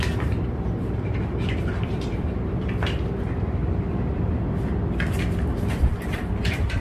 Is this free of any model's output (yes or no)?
no